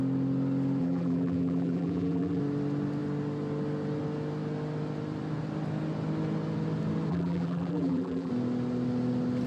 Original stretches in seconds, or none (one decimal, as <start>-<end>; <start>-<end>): 0.0-0.8; 2.4-7.1; 8.3-9.5